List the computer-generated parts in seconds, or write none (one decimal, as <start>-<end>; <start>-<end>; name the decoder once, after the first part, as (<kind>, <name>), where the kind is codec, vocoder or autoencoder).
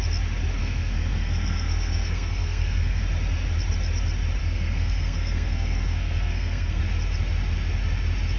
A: 0.6-3.0 (codec, SNAC); 4.4-6.8